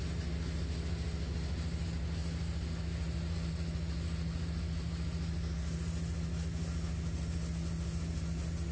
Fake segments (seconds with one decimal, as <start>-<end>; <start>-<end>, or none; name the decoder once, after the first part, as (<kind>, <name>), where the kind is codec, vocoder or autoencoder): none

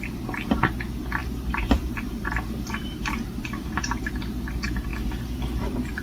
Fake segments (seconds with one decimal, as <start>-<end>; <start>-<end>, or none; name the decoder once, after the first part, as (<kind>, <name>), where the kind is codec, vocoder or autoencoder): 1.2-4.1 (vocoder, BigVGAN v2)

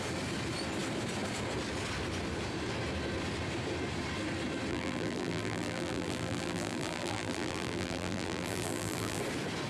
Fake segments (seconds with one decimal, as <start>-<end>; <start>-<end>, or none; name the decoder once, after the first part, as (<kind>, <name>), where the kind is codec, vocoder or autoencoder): 4.7-9.2 (vocoder, BigVGAN v2)